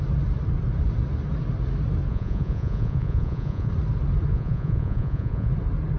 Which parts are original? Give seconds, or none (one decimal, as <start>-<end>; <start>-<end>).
0.0-2.1; 3.7-4.3; 5.5-6.0